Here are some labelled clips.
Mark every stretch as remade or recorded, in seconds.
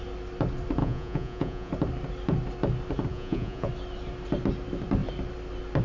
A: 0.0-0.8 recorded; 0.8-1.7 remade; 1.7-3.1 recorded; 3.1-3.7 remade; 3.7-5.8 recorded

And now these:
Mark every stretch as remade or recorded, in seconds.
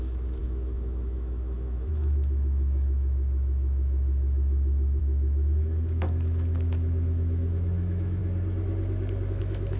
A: 0.0-8.2 remade; 8.2-9.3 recorded; 9.3-9.8 remade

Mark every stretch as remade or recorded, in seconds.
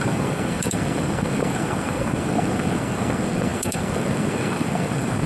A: 0.0-5.3 remade